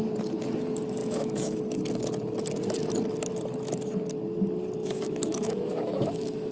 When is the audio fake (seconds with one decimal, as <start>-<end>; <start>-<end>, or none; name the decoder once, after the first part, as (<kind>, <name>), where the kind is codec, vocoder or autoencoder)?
1.0-1.6 (autoencoder, DAC-VAE); 4.8-6.5

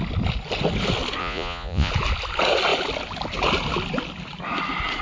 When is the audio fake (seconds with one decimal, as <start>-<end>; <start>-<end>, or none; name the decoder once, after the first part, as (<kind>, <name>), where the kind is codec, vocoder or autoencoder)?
1.2-1.9 (vocoder, Vocos)

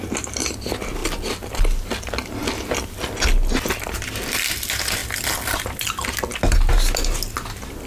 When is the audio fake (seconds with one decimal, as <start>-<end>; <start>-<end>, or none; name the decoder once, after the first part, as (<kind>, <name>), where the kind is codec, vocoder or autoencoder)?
none

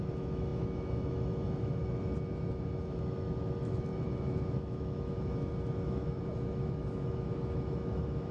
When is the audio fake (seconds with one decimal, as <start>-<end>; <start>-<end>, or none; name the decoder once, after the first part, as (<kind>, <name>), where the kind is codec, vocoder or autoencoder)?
0.0-8.3 (autoencoder, DAC-VAE)

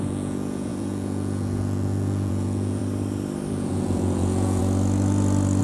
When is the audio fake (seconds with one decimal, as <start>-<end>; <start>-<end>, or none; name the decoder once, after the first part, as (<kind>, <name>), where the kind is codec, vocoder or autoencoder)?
0.0-2.8 (vocoder, Vocos); 3.5-4.6

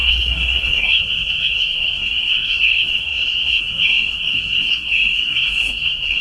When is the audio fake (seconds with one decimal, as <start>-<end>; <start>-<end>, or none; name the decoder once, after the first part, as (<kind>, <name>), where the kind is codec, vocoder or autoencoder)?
0.0-6.2 (codec, SNAC)

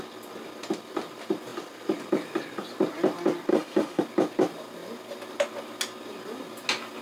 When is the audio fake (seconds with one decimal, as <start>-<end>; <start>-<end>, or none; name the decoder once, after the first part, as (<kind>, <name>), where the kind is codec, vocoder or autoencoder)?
3.5-4.0 (autoencoder, DAC-VAE)

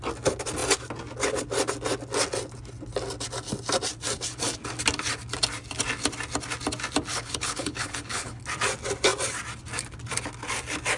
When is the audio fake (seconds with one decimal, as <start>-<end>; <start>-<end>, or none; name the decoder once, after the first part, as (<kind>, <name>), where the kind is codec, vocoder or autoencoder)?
7.1-8.4 (codec, HILCodec)